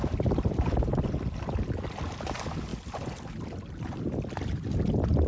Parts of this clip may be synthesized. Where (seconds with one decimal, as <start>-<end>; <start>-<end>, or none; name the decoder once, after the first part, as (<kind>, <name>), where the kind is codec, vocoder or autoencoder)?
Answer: none